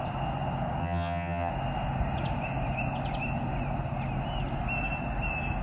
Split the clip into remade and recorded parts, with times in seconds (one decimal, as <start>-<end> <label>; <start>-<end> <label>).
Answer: 0.0-0.8 recorded; 0.8-1.5 remade; 1.5-5.6 recorded